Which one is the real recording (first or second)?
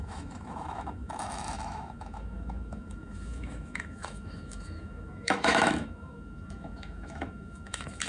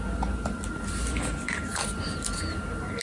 second